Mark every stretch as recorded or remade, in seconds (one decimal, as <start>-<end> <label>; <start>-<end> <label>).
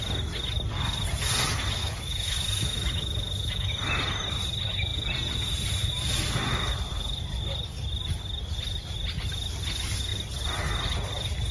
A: 0.0-1.8 recorded; 1.8-3.7 remade; 3.7-11.5 recorded